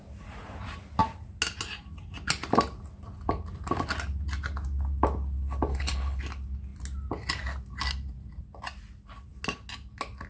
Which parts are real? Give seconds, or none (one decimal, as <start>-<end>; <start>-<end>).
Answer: 0.0-5.7; 6.2-10.3